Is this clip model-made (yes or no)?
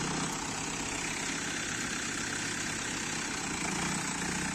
no